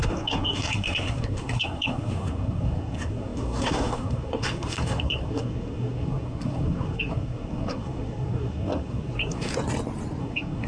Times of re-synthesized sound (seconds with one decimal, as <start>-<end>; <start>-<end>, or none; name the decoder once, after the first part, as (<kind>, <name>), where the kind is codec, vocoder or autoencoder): 0.0-9.5 (codec, SNAC); 10.2-10.7